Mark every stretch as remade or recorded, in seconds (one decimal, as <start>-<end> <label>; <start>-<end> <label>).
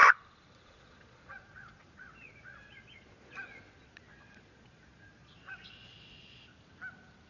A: 0.0-0.5 recorded; 0.5-6.5 remade; 6.5-7.3 recorded